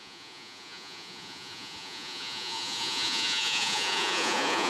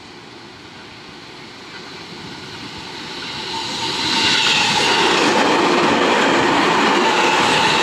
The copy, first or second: first